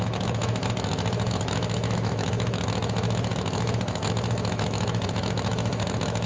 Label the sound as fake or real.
fake